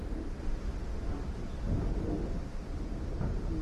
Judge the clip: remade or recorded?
recorded